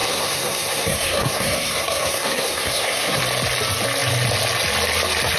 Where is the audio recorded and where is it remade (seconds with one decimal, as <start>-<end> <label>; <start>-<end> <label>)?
0.0-3.2 remade; 3.2-5.4 recorded